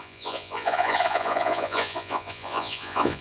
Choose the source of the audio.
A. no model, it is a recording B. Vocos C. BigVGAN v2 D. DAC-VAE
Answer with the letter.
B